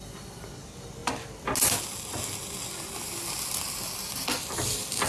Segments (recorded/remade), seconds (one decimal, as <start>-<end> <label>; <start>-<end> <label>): 0.0-5.1 recorded